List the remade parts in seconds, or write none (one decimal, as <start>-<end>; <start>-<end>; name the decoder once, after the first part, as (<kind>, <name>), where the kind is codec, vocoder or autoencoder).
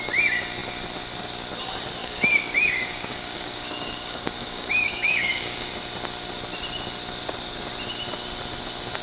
2.0-5.7 (codec, DAC)